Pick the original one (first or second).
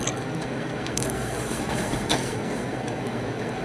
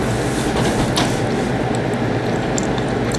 second